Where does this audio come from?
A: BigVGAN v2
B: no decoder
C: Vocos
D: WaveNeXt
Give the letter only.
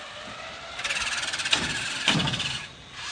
B